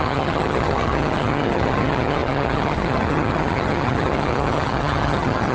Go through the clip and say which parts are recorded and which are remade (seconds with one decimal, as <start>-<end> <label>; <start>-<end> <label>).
0.0-5.5 remade